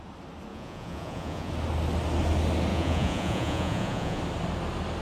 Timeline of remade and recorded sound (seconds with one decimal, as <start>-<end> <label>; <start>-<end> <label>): 0.0-0.5 recorded; 0.5-1.5 remade; 1.5-2.7 recorded; 2.7-4.2 remade; 4.2-5.0 recorded